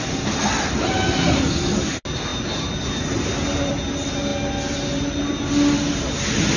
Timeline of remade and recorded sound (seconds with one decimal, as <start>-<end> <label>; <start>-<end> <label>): 0.0-6.6 recorded